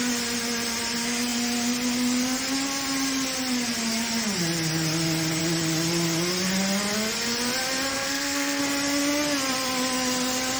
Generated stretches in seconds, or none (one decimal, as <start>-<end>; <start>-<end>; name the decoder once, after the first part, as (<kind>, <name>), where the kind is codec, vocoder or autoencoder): 7.9-8.6 (codec, SNAC)